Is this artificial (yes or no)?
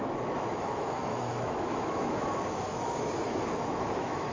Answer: yes